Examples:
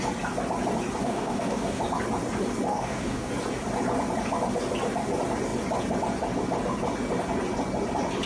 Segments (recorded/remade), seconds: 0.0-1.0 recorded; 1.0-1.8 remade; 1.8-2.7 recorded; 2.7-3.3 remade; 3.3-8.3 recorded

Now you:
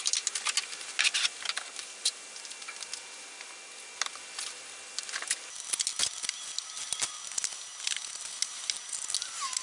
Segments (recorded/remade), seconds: 0.0-9.6 recorded

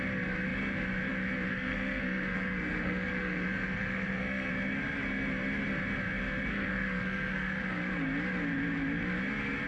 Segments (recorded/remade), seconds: 0.0-1.5 recorded; 1.5-4.5 remade; 4.5-6.5 recorded; 6.5-7.9 remade; 7.9-9.7 recorded

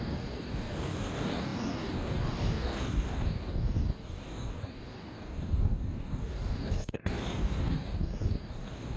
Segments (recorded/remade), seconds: 0.0-9.0 remade

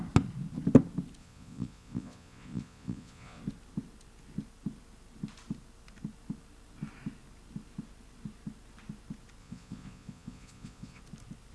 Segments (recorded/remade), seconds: 0.0-1.2 recorded; 1.2-3.4 remade; 3.4-9.4 recorded; 9.4-11.0 remade; 11.0-11.5 recorded

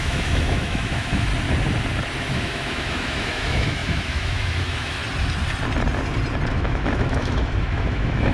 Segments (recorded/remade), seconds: 0.0-1.3 remade; 1.3-2.2 recorded; 2.2-5.0 remade; 5.0-6.5 recorded; 6.5-8.3 remade

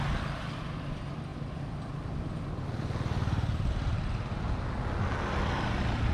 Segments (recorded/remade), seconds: 0.0-6.1 recorded